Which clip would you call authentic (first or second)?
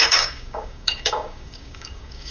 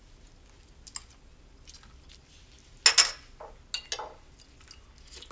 second